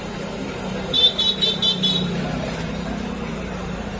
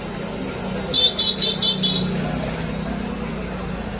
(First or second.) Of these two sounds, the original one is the second